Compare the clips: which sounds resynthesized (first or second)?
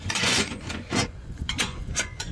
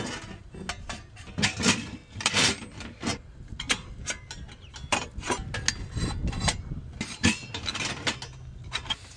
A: first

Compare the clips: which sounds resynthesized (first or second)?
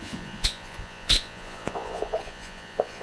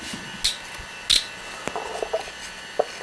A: first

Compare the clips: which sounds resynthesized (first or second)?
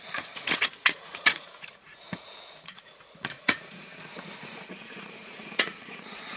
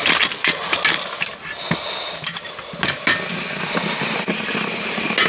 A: first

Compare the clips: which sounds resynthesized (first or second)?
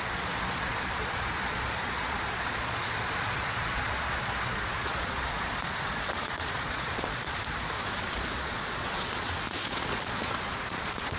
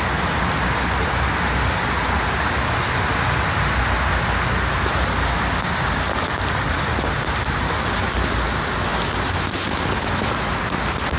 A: first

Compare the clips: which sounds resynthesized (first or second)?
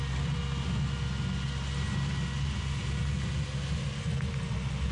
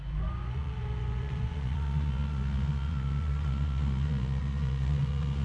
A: second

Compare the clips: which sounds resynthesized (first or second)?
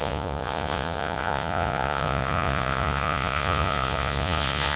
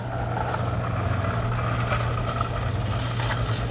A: first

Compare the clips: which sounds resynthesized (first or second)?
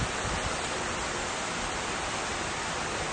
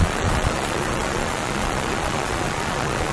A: second